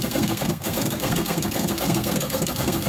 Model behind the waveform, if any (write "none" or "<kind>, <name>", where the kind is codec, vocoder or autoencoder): codec, SNAC